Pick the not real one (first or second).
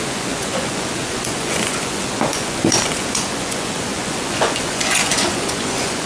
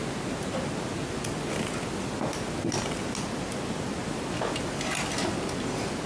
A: first